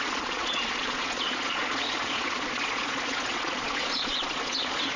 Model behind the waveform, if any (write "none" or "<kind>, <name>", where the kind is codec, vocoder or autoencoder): vocoder, Vocos